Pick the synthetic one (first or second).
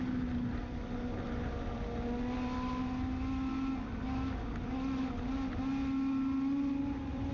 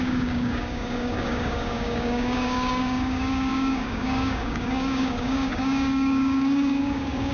second